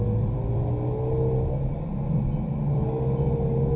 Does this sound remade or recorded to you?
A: recorded